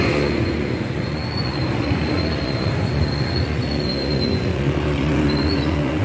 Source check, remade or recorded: remade